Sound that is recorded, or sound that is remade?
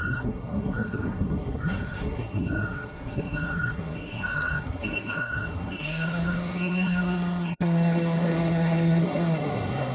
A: remade